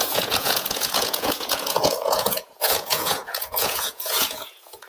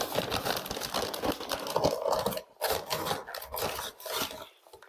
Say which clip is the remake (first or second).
first